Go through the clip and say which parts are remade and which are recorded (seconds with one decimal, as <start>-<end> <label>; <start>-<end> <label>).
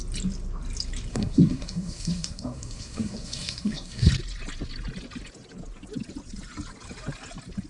0.0-1.1 recorded; 1.1-4.1 remade; 4.1-7.7 recorded